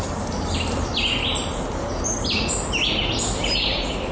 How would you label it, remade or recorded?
recorded